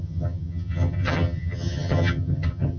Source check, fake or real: fake